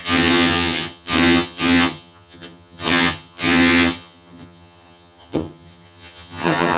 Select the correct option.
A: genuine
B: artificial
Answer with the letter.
B